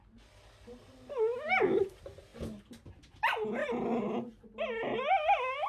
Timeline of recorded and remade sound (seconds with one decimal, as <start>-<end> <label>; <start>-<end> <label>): 0.0-5.7 recorded